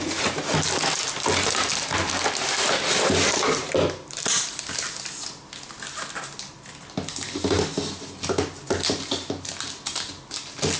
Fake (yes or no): no